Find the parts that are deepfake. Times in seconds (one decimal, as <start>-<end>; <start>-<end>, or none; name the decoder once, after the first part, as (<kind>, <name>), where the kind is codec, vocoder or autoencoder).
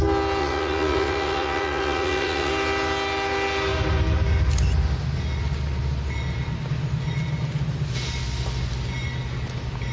0.4-2.5 (vocoder, Vocos)